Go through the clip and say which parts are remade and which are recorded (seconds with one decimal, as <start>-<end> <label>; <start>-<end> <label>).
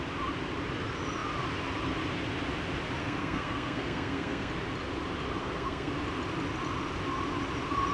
0.0-3.0 recorded; 3.0-4.5 remade; 4.5-5.4 recorded; 5.4-5.9 remade; 5.9-7.9 recorded